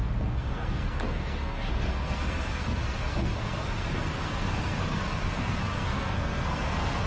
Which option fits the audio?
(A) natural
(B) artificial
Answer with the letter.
B